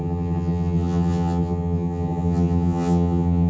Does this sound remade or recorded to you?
remade